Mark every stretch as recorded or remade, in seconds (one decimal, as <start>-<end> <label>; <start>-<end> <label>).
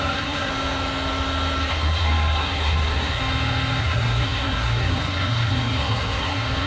0.0-0.5 remade; 0.5-1.7 recorded; 1.7-3.2 remade; 3.2-3.8 recorded; 3.8-6.7 remade